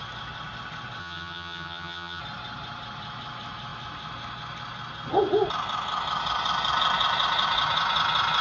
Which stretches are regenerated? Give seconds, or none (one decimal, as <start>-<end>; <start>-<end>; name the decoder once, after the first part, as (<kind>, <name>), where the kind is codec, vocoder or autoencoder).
1.0-2.2 (vocoder, HiFi-GAN)